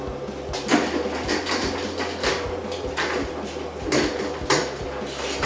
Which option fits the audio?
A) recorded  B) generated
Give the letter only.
A